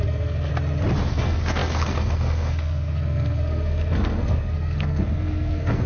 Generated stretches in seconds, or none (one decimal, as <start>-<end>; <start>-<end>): 0.0-0.5; 1.1-5.9